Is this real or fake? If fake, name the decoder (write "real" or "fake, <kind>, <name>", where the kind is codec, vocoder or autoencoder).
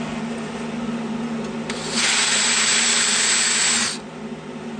real